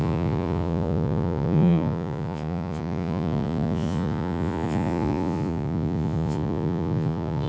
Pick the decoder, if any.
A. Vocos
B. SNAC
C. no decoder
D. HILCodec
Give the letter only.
A